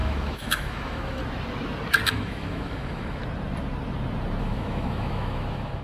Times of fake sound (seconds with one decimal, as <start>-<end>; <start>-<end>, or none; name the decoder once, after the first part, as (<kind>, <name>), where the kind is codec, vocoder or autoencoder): 0.0-1.2 (autoencoder, DAC-VAE); 2.1-3.2; 4.4-5.8